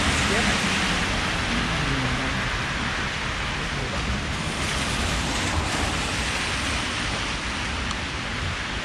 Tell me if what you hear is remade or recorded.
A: recorded